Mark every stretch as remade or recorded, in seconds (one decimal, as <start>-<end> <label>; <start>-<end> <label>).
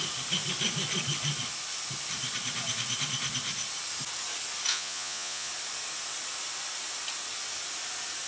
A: 0.0-4.7 recorded; 4.7-5.5 remade; 5.5-8.3 recorded